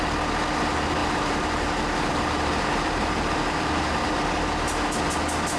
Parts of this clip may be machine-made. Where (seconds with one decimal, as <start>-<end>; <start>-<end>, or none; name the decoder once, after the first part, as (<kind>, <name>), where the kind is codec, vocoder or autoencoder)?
1.0-4.1 (vocoder, BigVGAN v2)